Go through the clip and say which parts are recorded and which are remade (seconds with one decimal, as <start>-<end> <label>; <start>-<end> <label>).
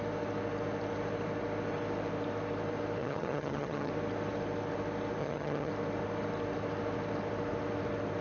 0.0-3.0 recorded; 3.0-3.9 remade; 3.9-5.2 recorded; 5.2-5.7 remade; 5.7-8.2 recorded